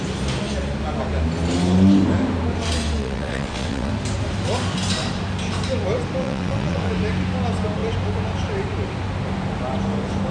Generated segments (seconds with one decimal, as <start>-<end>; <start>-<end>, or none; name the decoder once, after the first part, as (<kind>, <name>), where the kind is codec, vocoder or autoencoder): 3.0-3.9 (vocoder, WaveNeXt); 6.2-6.9